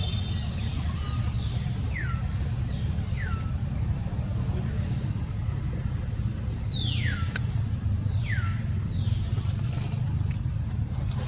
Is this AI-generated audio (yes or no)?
yes